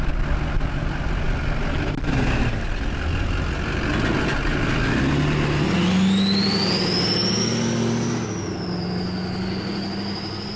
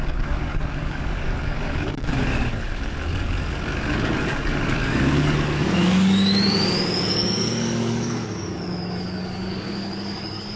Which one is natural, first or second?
first